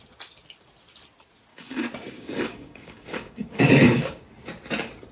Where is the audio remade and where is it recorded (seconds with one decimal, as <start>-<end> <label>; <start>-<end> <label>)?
0.0-1.5 recorded; 1.5-4.2 remade; 4.2-5.1 recorded

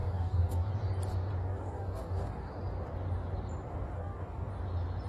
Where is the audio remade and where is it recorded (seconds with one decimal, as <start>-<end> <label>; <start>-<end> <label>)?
0.0-0.7 remade; 0.7-1.4 recorded; 1.4-2.5 remade; 2.5-3.7 recorded; 3.7-4.5 remade; 4.5-5.1 recorded

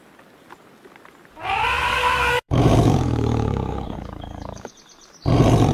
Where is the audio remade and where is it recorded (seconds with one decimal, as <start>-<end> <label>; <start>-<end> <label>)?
0.0-1.9 recorded; 1.9-4.7 remade; 4.7-5.7 recorded

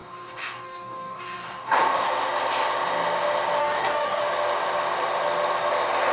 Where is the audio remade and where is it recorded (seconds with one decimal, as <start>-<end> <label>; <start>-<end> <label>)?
0.0-2.1 remade; 2.1-3.6 recorded; 3.6-4.2 remade; 4.2-6.1 recorded

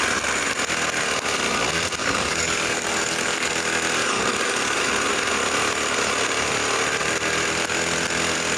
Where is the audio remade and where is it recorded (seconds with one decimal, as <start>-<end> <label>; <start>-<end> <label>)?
0.0-2.0 recorded; 2.0-3.5 remade; 3.5-4.0 recorded; 4.0-4.9 remade; 4.9-8.6 recorded

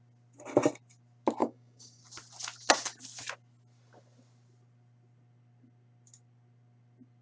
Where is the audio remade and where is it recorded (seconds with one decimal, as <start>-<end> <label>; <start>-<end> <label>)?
0.0-1.4 recorded; 1.4-2.0 remade; 2.0-7.2 recorded

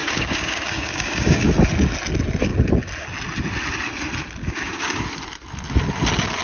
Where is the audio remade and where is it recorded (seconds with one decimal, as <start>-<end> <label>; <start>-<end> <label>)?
0.0-1.5 remade; 1.5-4.4 recorded; 4.4-5.1 remade; 5.1-6.4 recorded